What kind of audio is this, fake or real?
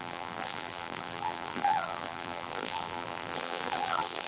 fake